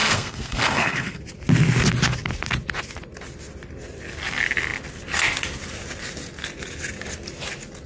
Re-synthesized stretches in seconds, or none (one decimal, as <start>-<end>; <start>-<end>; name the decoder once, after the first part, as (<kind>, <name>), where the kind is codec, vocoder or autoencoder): 0.0-1.2 (codec, SNAC)